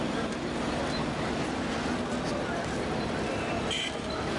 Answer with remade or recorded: recorded